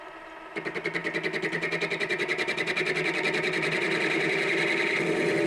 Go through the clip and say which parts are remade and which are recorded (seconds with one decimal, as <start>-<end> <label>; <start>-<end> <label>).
0.0-5.5 recorded